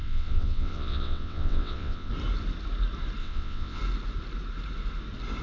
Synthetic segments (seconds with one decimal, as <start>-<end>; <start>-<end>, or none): 0.0-2.1; 3.2-3.8